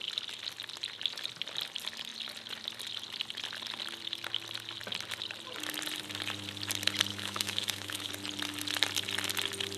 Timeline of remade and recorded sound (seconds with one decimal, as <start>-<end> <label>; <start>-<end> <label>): 0.0-7.1 recorded; 7.1-8.1 remade; 8.1-9.8 recorded